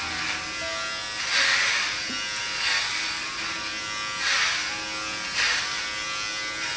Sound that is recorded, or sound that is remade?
recorded